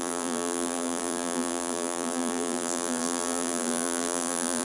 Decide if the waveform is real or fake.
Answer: fake